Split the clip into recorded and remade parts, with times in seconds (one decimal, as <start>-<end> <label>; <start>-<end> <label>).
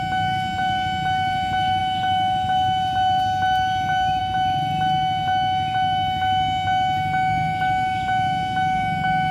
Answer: 0.0-9.3 recorded